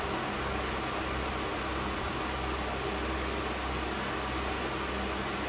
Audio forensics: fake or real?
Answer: real